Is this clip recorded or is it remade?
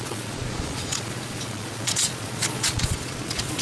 remade